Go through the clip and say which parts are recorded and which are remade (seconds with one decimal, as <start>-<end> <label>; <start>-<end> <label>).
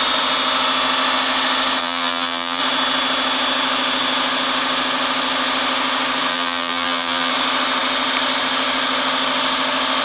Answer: 0.0-1.8 recorded; 1.8-2.6 remade; 2.6-6.3 recorded; 6.3-7.3 remade; 7.3-10.0 recorded